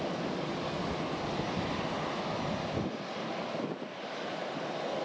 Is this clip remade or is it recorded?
recorded